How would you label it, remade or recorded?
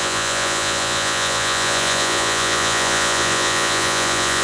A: remade